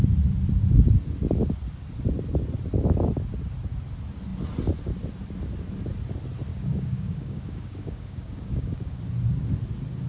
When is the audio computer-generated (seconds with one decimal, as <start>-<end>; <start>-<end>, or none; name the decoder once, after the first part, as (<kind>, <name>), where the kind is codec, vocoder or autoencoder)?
6.5-9.0 (codec, DAC)